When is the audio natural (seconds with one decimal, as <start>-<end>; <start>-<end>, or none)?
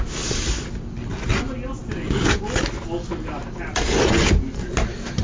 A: 0.0-5.2